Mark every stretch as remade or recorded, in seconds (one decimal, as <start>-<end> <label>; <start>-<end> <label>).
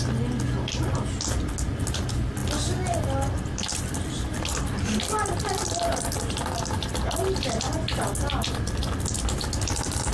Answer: 0.0-10.1 recorded